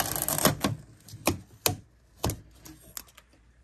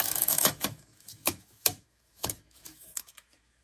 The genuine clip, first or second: first